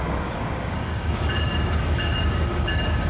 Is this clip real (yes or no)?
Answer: no